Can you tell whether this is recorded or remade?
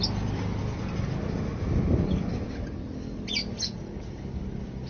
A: recorded